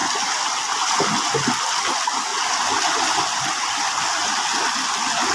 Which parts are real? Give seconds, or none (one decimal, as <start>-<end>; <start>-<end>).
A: 0.0-5.3